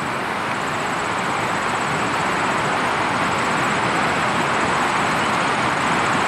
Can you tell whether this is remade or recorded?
recorded